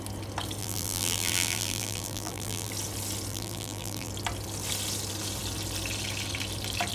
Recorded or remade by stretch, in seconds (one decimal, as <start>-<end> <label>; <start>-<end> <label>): 0.0-0.6 recorded; 0.6-2.7 remade; 2.7-3.3 recorded; 3.3-4.1 remade; 4.1-6.9 recorded